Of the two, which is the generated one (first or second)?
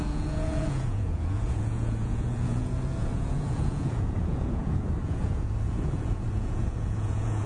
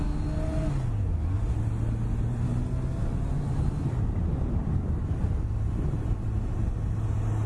first